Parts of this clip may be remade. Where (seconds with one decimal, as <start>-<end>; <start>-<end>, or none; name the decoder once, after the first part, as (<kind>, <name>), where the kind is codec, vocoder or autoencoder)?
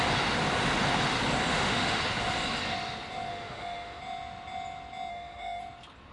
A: 1.5-2.0 (autoencoder, DAC-VAE); 3.3-4.0; 5.1-5.6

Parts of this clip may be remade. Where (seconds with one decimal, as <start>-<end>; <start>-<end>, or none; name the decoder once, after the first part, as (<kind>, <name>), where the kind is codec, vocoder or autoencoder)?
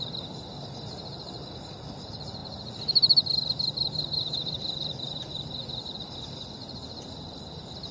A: none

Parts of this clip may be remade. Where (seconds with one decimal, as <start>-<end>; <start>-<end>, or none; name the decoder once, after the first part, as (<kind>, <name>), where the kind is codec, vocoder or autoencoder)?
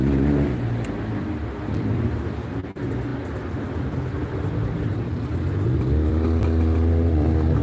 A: none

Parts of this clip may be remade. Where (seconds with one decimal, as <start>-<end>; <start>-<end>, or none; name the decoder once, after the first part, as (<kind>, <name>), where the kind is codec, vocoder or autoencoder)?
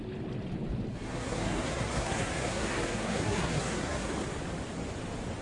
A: 0.9-4.1 (codec, SNAC)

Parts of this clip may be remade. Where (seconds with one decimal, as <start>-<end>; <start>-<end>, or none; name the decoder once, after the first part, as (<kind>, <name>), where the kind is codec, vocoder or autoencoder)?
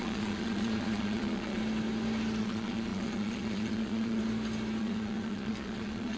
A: 0.0-1.6 (vocoder, Vocos); 2.4-4.2; 4.8-6.2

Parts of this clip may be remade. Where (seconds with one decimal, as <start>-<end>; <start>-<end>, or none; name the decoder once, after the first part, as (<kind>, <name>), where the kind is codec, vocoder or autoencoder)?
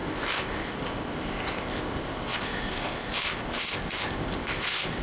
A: 0.0-5.0 (codec, ZipCodec)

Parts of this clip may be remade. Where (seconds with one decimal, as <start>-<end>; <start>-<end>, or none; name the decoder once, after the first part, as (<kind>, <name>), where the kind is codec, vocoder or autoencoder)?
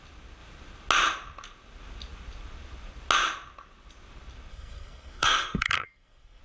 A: 4.5-6.4 (codec, SNAC)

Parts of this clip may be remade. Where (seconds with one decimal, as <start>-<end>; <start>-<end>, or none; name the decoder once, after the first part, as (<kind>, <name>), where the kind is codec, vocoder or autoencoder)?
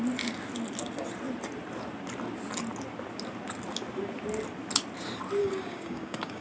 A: 5.4-6.4 (codec, DAC)